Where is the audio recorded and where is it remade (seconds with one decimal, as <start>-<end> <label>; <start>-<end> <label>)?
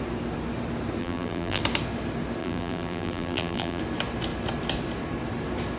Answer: 0.0-1.0 recorded; 1.0-1.6 remade; 1.6-2.4 recorded; 2.4-3.8 remade; 3.8-5.8 recorded